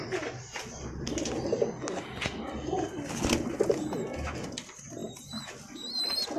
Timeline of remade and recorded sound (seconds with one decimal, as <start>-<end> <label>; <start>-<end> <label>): 0.0-6.4 recorded

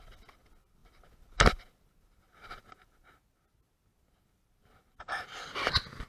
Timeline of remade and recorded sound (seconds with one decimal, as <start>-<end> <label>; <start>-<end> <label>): 0.0-6.1 recorded

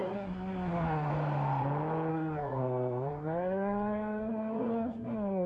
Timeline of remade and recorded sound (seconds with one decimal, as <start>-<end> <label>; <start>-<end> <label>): 0.0-1.1 remade; 1.1-2.1 recorded; 2.1-5.5 remade

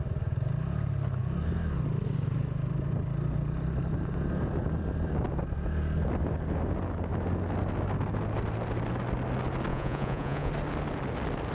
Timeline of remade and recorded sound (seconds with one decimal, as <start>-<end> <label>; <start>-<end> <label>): 0.0-9.7 recorded; 9.7-10.5 remade; 10.5-11.5 recorded

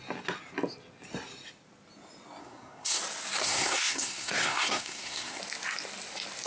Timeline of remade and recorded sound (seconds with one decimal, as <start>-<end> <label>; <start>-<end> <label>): 0.0-2.4 recorded; 2.4-3.0 remade; 3.0-3.4 recorded; 3.4-5.4 remade; 5.4-6.5 recorded

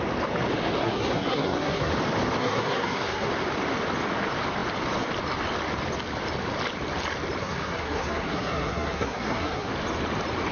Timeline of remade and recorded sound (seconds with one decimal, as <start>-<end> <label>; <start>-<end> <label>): 0.0-0.8 recorded; 0.8-1.9 remade; 1.9-2.4 recorded; 2.4-3.3 remade; 3.3-7.4 recorded; 7.4-9.7 remade; 9.7-10.5 recorded

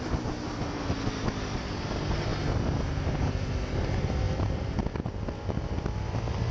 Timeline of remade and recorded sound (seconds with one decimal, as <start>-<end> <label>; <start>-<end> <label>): 0.0-6.5 recorded

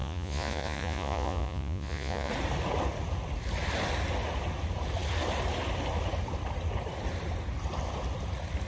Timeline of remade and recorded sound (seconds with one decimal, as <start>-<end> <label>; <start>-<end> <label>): 0.0-2.3 remade; 2.3-8.7 recorded